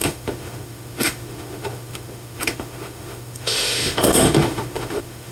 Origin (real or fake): fake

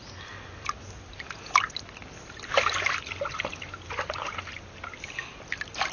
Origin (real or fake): real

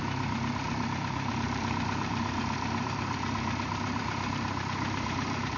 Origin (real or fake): fake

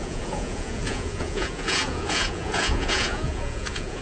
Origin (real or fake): fake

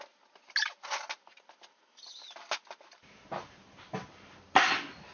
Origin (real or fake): real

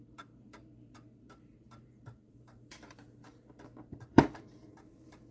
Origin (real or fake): fake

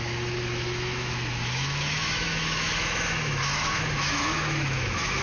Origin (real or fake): fake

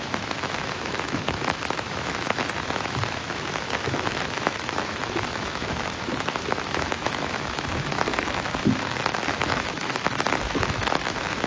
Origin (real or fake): fake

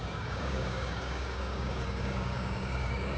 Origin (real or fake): fake